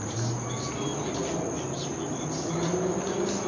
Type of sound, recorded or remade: recorded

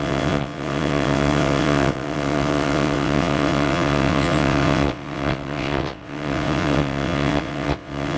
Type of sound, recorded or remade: remade